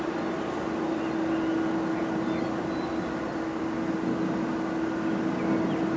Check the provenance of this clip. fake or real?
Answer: real